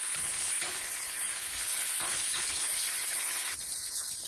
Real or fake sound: fake